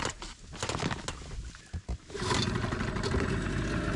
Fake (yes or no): no